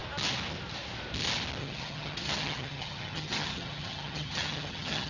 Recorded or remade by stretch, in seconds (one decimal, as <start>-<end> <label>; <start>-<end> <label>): 0.0-1.6 recorded; 1.6-5.1 remade